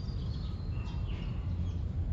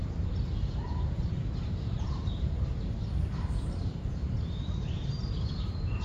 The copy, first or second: second